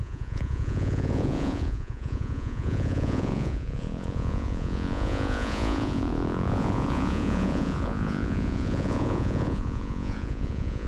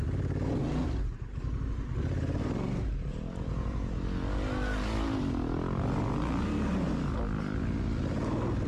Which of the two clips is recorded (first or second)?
second